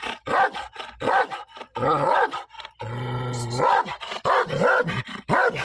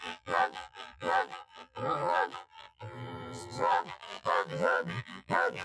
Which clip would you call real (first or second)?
first